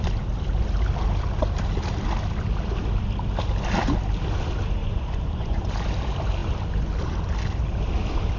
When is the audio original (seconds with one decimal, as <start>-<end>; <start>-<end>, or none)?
0.0-4.8; 5.6-8.4